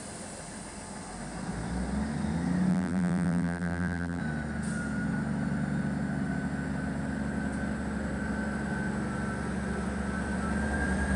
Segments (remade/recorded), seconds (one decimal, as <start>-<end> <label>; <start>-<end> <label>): 0.0-2.7 recorded; 2.7-4.2 remade; 4.2-11.2 recorded

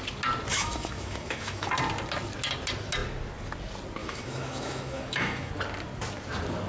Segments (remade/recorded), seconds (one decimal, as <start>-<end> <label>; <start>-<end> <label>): 0.0-0.5 recorded; 0.5-1.7 remade; 1.7-4.0 recorded; 4.0-5.5 remade; 5.5-6.7 recorded

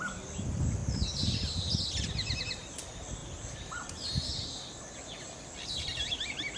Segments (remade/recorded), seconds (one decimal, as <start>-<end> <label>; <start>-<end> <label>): 0.0-6.6 recorded

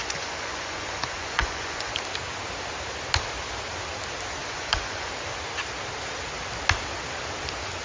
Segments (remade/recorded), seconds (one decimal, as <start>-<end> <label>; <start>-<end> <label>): 0.0-1.9 remade; 1.9-4.4 recorded; 4.4-5.1 remade; 5.1-7.8 recorded

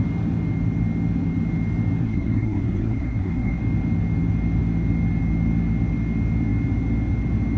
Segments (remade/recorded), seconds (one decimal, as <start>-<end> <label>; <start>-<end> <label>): 0.0-2.0 recorded; 2.0-3.6 remade; 3.6-7.6 recorded

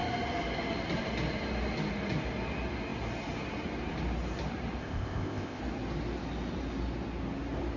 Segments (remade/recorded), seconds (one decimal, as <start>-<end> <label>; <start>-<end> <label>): 0.0-4.8 recorded; 4.8-5.6 remade; 5.6-7.8 recorded